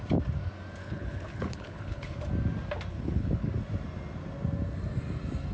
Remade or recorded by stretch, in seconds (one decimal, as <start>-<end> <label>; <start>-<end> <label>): 0.0-0.8 recorded; 0.8-2.2 remade; 2.2-2.9 recorded; 2.9-3.5 remade; 3.5-5.5 recorded